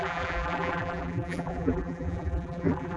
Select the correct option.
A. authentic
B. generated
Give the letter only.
B